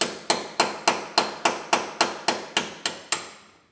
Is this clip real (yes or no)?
yes